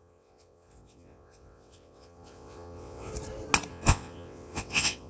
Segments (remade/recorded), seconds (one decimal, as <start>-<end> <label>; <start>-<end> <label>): 0.0-3.1 remade; 3.1-3.7 recorded; 3.7-5.1 remade